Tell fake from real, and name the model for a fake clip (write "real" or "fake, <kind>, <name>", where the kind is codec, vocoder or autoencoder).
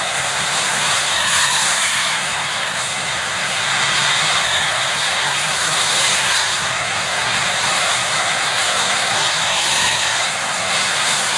fake, codec, SNAC